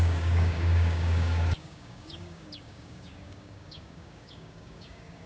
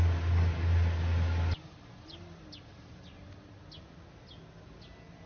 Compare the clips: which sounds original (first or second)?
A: second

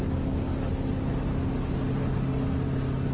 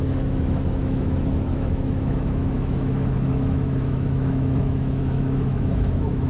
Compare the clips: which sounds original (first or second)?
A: first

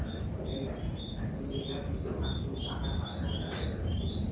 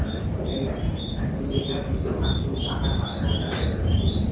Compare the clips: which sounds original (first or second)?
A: first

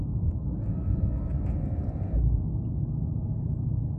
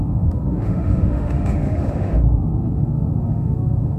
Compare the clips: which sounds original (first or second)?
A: first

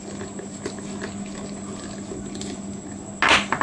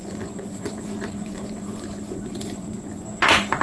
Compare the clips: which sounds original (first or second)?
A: first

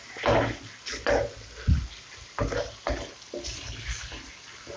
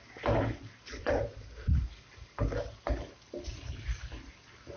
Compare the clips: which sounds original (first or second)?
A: first